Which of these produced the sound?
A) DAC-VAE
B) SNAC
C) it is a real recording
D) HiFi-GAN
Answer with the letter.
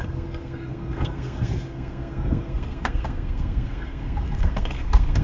B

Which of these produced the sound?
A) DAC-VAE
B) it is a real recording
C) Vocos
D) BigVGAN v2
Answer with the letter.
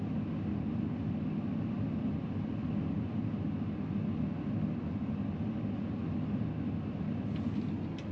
B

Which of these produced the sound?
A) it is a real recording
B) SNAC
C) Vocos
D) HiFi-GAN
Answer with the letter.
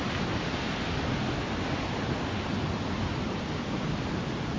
A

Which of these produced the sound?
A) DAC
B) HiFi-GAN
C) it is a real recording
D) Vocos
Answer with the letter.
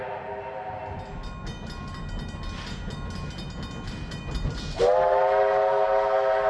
C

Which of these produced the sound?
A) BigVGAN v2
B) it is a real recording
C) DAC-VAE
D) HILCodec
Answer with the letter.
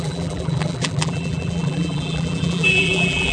A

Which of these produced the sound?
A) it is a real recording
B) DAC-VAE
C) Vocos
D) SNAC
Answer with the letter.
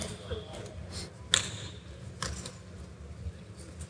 A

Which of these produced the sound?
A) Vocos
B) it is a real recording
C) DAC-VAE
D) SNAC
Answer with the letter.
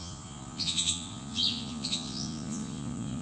A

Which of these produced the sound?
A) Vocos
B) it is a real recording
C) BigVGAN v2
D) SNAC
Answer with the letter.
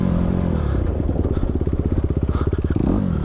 B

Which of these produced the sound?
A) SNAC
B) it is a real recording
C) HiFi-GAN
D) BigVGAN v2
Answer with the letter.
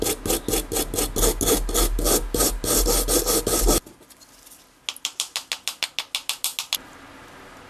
B